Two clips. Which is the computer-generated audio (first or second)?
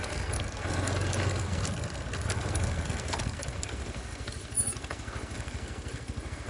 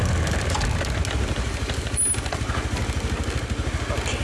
first